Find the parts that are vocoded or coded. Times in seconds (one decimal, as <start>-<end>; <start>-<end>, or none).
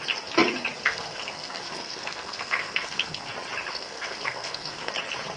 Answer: 0.8-3.3; 3.7-4.9